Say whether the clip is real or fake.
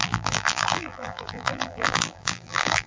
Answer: fake